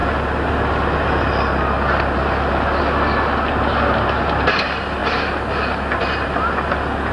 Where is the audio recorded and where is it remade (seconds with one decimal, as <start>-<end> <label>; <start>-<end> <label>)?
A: 0.0-7.1 recorded